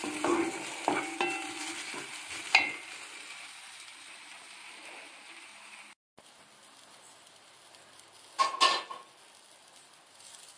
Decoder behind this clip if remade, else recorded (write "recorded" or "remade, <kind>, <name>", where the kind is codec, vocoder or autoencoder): recorded